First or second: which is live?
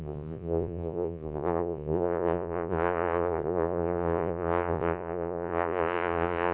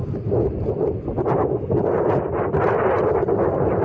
second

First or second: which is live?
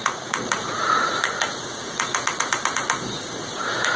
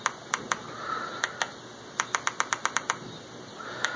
second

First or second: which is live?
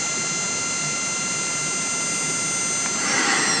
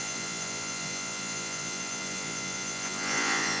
first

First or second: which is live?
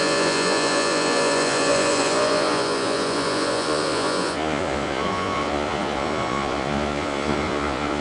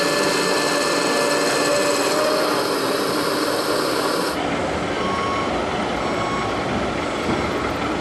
second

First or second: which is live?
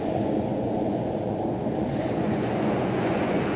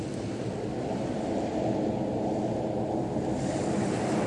second